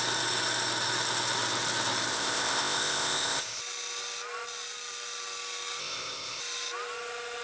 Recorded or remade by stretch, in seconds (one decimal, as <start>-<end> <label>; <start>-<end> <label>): 0.0-2.1 recorded; 2.1-3.6 remade; 3.6-5.8 recorded; 5.8-6.4 remade; 6.4-7.4 recorded